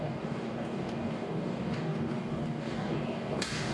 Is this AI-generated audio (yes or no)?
yes